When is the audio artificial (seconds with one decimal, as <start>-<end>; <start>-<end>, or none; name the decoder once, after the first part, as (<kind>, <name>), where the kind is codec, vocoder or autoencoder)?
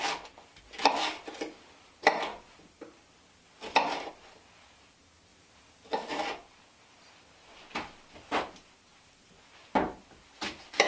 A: none